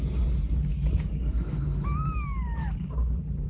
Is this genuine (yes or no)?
no